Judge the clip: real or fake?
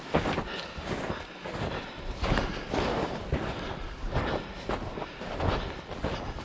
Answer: real